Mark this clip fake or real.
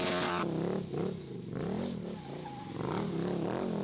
real